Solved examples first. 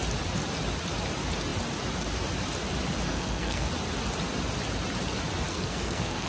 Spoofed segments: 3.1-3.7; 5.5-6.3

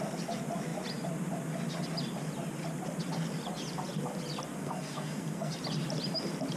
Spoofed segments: 4.6-5.5